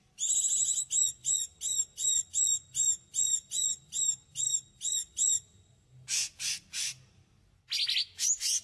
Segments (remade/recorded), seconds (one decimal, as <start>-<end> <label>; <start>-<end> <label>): 0.0-8.6 recorded

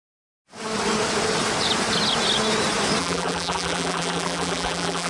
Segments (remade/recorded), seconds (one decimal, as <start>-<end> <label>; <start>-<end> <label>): 0.0-3.0 recorded; 3.0-5.1 remade